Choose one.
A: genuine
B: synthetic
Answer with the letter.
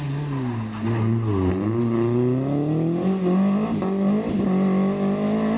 A